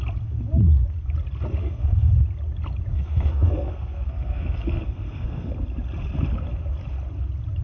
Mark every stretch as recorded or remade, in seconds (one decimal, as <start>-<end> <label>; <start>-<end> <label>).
0.0-1.6 recorded; 1.6-2.1 remade; 2.1-2.9 recorded; 2.9-5.5 remade; 5.5-7.6 recorded